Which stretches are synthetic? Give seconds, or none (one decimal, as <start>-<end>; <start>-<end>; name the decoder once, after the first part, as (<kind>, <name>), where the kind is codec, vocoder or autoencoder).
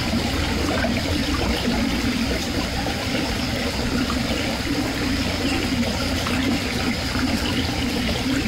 1.2-3.7 (vocoder, BigVGAN v2)